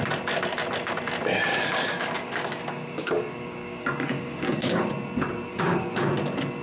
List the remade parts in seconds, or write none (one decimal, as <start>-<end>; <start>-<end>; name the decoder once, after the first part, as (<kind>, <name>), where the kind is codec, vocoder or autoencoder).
1.5-4.9 (codec, DAC); 5.5-6.1